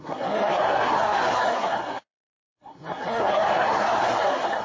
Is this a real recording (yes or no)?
no